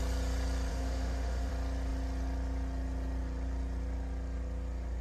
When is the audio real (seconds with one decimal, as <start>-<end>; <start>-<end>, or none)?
0.0-0.7; 1.5-5.0